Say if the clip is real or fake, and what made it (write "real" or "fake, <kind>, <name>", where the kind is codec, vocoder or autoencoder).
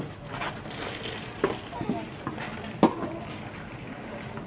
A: real